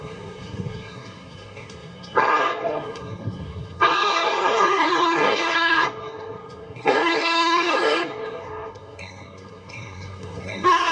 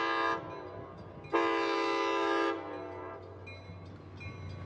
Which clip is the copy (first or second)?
first